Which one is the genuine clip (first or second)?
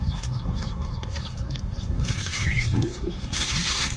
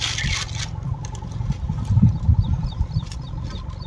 second